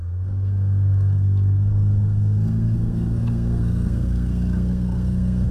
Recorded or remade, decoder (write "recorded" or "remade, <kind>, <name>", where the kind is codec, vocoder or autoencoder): remade, codec, SNAC